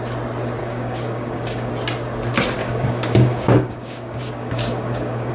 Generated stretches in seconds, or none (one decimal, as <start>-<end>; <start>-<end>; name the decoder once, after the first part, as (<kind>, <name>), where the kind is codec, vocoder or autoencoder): 0.6-1.7 (codec, DAC); 2.6-5.3